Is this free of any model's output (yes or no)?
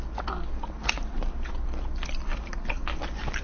yes